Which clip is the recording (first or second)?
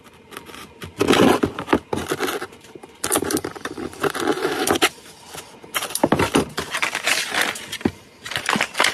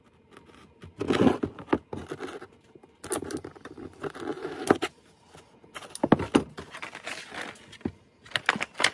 second